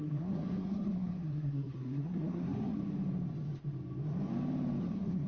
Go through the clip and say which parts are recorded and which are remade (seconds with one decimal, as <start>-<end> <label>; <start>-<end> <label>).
0.0-2.8 remade; 2.8-4.8 recorded; 4.8-5.3 remade

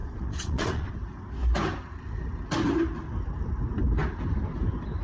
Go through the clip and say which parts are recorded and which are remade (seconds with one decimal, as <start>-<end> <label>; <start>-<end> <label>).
0.0-0.9 remade; 0.9-5.0 recorded

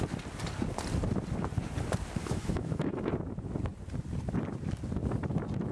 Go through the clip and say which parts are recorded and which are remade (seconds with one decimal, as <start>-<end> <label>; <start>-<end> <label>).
0.0-2.2 recorded; 2.2-3.0 remade; 3.0-5.7 recorded

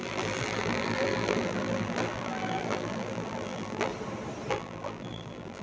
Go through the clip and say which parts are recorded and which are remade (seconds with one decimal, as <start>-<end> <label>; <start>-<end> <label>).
0.0-3.9 remade; 3.9-4.5 recorded; 4.5-5.6 remade

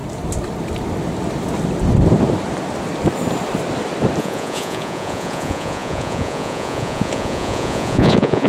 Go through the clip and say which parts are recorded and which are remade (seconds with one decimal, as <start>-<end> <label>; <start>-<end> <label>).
0.0-4.2 recorded; 4.2-8.5 remade